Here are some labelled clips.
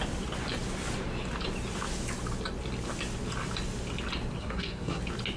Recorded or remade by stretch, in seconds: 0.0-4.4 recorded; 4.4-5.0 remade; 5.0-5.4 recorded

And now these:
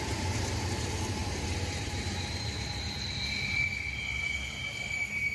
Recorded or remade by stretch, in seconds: 0.0-1.2 recorded; 1.2-3.0 remade; 3.0-5.3 recorded